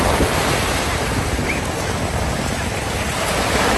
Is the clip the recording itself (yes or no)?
yes